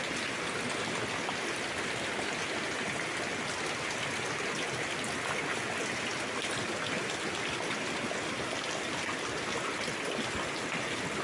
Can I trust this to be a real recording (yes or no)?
yes